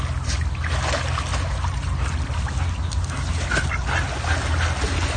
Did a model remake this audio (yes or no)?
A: no